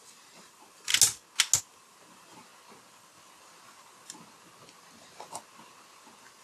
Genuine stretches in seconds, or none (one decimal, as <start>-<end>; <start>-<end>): 0.9-1.6; 2.5-6.4